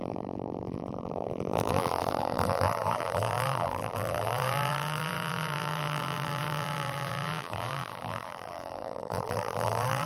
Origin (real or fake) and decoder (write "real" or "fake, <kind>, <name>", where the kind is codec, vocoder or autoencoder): fake, vocoder, BigVGAN v2